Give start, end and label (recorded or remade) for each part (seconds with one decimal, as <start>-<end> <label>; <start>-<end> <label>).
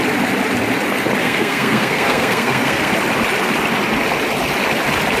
0.0-1.2 recorded; 1.2-2.9 remade; 2.9-5.2 recorded